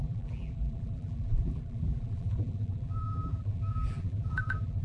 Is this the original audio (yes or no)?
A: no